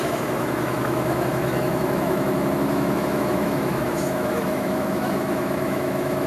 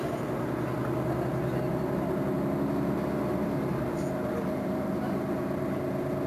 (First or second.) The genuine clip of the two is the second